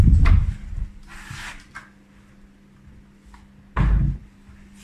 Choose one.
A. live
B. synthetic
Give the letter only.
A